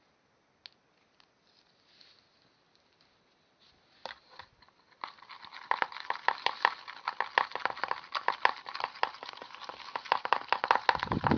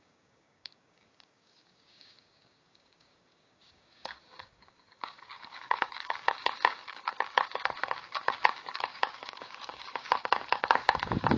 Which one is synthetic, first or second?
second